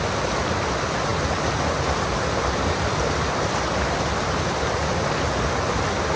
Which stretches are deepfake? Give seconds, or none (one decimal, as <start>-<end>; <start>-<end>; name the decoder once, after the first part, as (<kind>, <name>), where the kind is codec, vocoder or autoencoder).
none